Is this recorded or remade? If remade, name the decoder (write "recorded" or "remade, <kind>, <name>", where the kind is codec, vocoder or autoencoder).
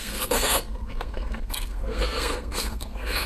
remade, codec, SNAC